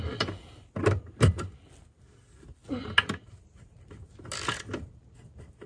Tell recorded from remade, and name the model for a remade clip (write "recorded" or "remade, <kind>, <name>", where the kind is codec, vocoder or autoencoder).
recorded